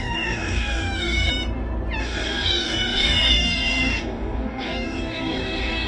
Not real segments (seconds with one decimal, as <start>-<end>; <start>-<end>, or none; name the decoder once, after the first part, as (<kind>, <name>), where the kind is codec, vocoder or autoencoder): 0.0-1.3 (codec, DAC); 2.0-5.9